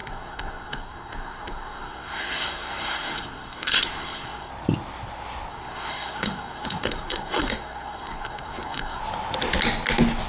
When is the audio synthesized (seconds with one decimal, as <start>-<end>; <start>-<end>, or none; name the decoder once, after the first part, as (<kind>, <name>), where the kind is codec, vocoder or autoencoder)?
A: 0.0-4.5 (codec, SNAC); 5.5-9.0